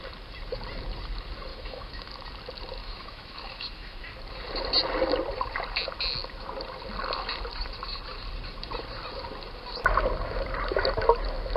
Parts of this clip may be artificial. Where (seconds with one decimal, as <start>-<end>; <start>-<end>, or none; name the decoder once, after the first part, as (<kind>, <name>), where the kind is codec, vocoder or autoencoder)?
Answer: 1.5-2.1 (autoencoder, DAC-VAE); 2.8-4.0